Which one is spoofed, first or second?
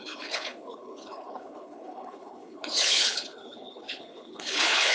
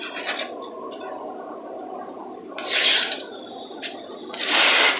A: first